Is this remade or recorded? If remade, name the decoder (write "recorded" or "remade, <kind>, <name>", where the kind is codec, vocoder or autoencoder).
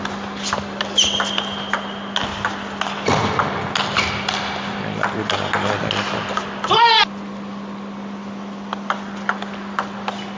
recorded